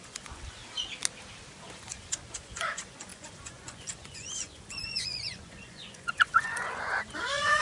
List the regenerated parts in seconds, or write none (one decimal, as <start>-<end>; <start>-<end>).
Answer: 0.0-0.6; 1.9-7.6